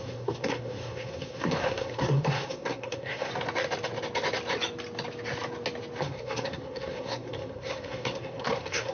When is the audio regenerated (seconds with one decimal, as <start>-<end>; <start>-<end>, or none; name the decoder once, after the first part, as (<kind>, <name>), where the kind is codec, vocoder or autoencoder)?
0.0-3.3 (codec, SNAC); 6.0-8.9

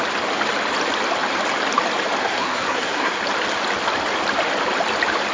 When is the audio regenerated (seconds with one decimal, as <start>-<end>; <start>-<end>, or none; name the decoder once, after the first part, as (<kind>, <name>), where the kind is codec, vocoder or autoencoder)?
2.2-3.2 (codec, SNAC)

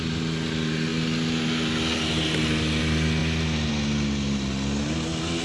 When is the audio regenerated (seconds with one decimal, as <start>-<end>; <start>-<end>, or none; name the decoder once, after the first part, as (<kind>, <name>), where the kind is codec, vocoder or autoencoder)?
none